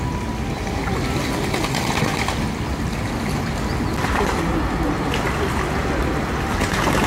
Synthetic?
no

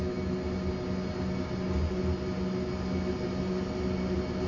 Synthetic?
no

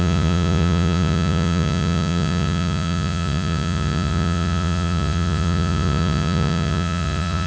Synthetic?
yes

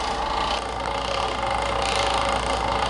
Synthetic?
no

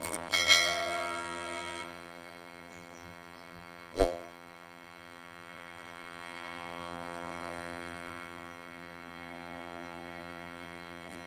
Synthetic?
yes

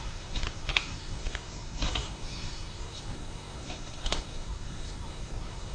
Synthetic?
yes